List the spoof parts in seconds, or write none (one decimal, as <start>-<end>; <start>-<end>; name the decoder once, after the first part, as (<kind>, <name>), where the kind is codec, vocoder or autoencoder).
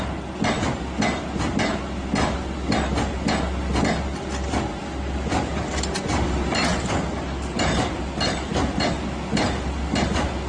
none